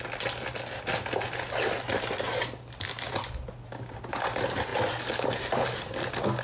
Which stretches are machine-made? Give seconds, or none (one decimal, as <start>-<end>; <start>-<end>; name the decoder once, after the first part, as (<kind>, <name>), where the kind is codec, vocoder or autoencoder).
none

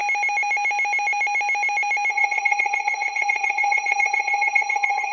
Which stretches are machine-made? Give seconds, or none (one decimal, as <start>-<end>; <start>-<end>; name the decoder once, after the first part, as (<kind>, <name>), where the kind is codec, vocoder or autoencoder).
2.1-5.1 (vocoder, HiFi-GAN)

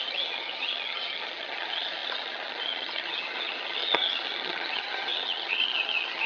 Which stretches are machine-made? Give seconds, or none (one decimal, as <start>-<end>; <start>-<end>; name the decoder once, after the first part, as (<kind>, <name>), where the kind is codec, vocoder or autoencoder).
0.0-6.3 (vocoder, HiFi-GAN)

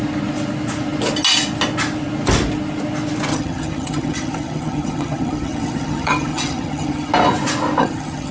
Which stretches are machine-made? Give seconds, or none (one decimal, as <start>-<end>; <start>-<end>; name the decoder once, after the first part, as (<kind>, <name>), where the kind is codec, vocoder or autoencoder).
3.3-7.1 (vocoder, HiFi-GAN); 7.8-8.3

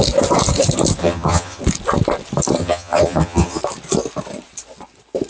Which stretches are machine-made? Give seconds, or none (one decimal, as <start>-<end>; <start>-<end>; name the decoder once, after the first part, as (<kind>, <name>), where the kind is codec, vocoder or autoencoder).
1.0-1.6 (vocoder, HiFi-GAN); 2.6-3.6

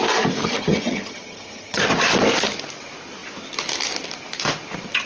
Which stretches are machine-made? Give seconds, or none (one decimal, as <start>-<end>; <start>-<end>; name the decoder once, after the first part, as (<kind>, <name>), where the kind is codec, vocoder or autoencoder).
0.4-1.8 (vocoder, HiFi-GAN)